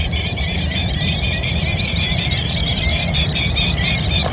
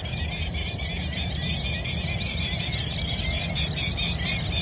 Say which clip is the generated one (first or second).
first